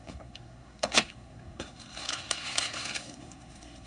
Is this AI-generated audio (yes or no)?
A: yes